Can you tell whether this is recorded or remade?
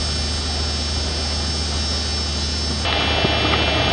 recorded